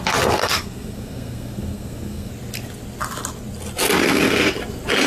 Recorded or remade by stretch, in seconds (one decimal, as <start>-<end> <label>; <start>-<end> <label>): 0.0-0.4 recorded; 0.4-2.3 remade; 2.3-5.1 recorded